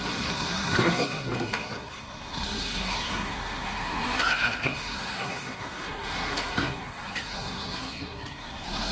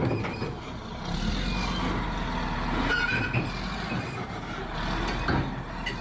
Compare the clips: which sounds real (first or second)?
second